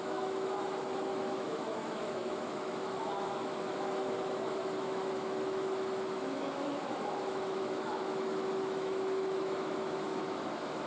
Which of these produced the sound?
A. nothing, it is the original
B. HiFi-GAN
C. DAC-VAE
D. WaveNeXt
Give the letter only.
C